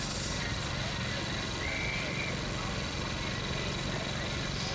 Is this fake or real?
real